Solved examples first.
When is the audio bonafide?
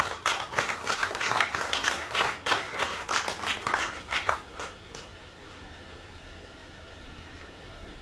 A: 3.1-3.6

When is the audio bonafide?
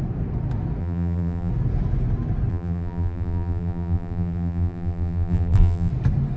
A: 0.0-0.8; 1.5-2.5; 5.9-6.4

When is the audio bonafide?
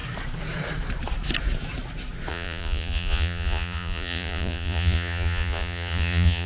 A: 0.0-2.3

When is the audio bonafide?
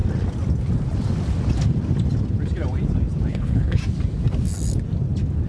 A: 0.0-3.3; 3.8-5.5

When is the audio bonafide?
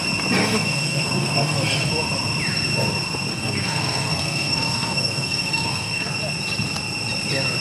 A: 0.0-0.4; 1.9-3.3; 6.1-7.6